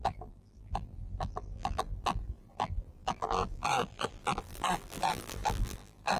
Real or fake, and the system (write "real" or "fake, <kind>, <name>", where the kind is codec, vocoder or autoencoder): fake, vocoder, BigVGAN v2